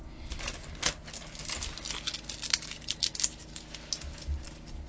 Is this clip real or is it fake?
real